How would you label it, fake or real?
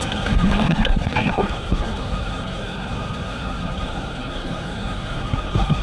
fake